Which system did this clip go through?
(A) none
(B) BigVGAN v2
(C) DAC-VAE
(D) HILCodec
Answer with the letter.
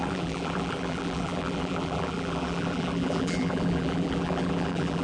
B